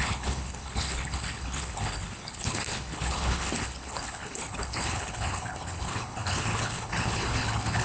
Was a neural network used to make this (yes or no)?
yes